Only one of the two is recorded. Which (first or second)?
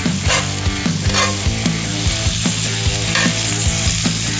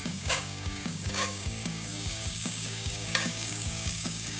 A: first